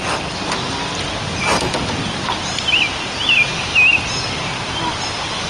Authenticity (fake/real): real